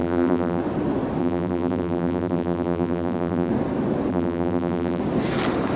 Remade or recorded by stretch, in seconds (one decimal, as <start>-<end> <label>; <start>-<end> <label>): 0.0-0.6 remade; 0.6-1.2 recorded; 1.2-3.5 remade; 3.5-4.1 recorded; 4.1-5.0 remade; 5.0-5.8 recorded